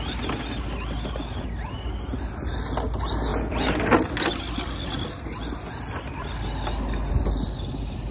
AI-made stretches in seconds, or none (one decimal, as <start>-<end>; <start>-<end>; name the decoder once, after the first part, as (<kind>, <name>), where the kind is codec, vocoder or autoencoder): none